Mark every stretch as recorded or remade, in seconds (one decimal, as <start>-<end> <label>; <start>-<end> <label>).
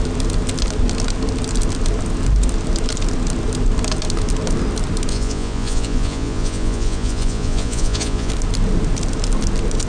0.0-5.1 recorded; 5.1-8.3 remade; 8.3-9.9 recorded